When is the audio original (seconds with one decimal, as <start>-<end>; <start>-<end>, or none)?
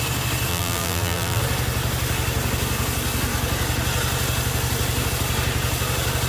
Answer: 0.0-0.5; 1.4-6.3